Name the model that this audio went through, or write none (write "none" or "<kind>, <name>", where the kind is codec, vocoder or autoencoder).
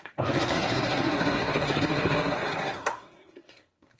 codec, SNAC